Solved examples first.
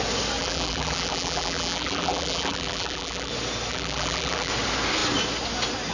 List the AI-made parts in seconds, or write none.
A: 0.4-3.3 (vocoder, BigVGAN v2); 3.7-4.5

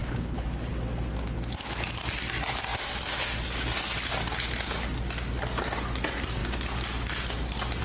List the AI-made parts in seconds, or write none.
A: 0.0-0.7 (codec, HILCodec)

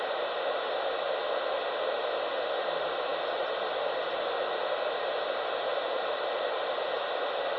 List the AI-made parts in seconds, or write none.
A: none